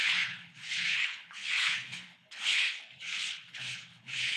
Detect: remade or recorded remade